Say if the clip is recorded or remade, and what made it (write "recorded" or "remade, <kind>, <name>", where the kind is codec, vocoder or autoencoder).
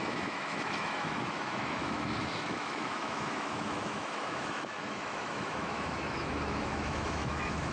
remade, autoencoder, DAC-VAE